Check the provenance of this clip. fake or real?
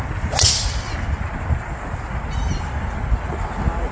real